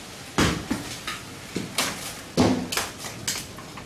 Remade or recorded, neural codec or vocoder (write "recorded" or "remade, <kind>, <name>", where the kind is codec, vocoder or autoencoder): recorded